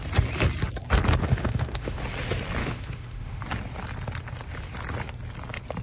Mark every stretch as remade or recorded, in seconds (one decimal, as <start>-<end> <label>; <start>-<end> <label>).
0.0-1.2 recorded; 1.2-2.0 remade; 2.0-2.6 recorded; 2.6-3.4 remade; 3.4-5.8 recorded